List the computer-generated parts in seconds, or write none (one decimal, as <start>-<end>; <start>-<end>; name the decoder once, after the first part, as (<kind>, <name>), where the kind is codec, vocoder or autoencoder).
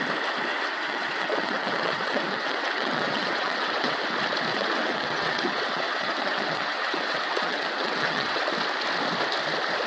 0.5-4.0 (vocoder, WaveNeXt); 4.5-8.4